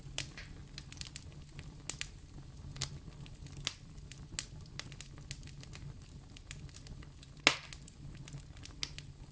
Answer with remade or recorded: recorded